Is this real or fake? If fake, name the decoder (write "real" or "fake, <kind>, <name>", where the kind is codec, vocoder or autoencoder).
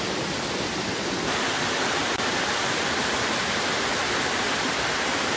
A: real